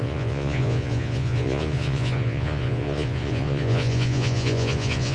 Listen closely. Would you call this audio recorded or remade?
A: remade